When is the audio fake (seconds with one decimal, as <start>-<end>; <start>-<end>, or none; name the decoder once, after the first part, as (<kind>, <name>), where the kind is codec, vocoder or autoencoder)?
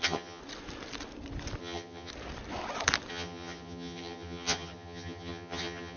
0.0-0.4 (vocoder, HiFi-GAN); 1.6-2.1; 3.1-6.0